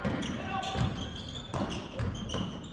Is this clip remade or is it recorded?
recorded